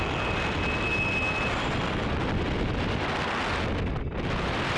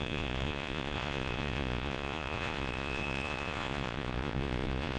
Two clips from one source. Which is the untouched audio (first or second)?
first